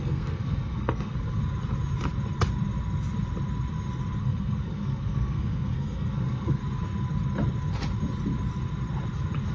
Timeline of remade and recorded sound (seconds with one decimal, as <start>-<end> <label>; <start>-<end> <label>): 0.0-1.4 remade; 1.4-4.2 recorded; 4.2-6.6 remade; 6.6-9.5 recorded